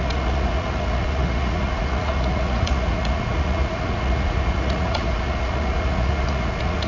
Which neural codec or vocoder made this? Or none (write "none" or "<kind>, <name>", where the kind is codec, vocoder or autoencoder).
vocoder, Vocos